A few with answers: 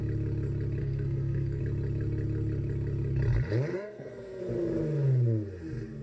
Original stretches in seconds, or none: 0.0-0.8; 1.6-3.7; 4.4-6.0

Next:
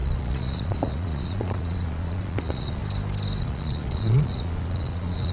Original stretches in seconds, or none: 2.8-3.4